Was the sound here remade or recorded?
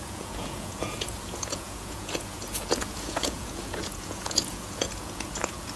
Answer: remade